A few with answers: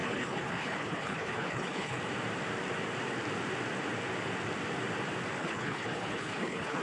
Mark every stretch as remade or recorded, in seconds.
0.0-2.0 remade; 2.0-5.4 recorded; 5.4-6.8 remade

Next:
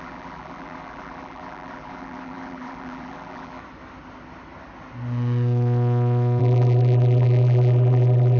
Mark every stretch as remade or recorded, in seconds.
0.0-3.6 remade; 3.6-6.4 recorded; 6.4-8.4 remade

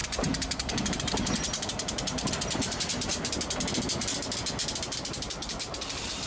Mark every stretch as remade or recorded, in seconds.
0.0-3.1 remade; 3.1-5.0 recorded; 5.0-6.3 remade